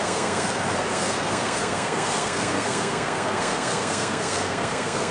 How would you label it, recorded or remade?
remade